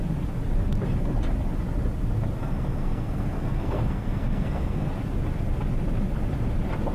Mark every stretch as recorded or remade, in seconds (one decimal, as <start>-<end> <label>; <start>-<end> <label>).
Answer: 0.0-2.4 recorded; 2.4-4.9 remade; 4.9-6.9 recorded